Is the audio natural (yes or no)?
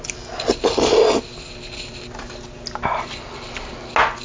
yes